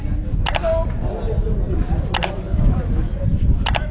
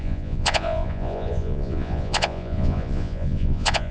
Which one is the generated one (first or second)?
second